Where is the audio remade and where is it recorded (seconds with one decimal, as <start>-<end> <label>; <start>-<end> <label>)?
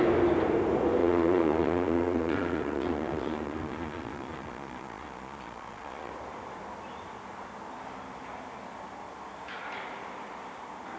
0.0-1.0 recorded; 1.0-6.1 remade; 6.1-11.0 recorded